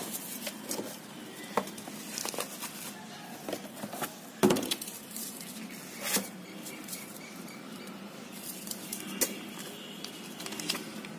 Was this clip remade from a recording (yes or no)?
no